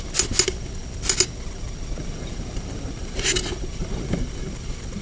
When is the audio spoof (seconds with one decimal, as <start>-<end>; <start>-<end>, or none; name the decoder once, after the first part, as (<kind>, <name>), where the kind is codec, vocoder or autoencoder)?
none